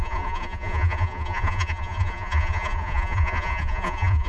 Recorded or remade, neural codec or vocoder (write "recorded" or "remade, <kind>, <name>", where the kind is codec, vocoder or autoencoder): remade, vocoder, Vocos